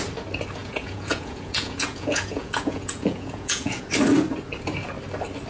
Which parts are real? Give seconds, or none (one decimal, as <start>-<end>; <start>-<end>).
0.0-0.6; 3.9-5.5